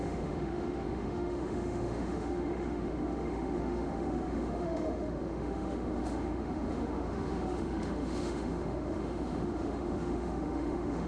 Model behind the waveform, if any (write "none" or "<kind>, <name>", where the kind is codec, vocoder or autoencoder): autoencoder, DAC-VAE